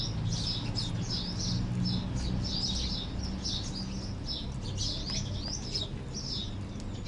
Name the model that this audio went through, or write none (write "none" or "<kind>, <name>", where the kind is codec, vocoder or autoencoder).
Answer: none